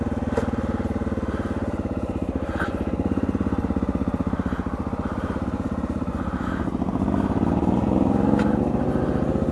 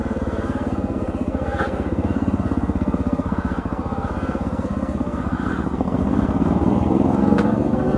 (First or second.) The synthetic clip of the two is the second